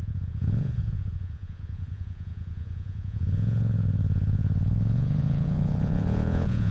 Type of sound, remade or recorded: remade